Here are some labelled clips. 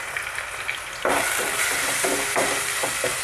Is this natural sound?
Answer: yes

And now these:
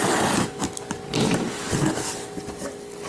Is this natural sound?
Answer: yes